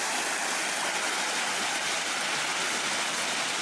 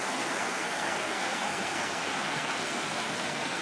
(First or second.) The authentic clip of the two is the first